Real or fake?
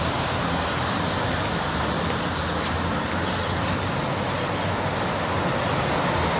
real